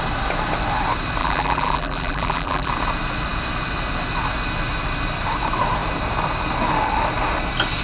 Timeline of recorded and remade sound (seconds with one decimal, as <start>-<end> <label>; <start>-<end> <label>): 0.0-1.2 recorded; 1.2-2.7 remade; 2.7-7.8 recorded